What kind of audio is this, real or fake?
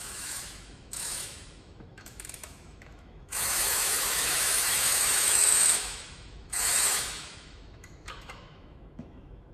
fake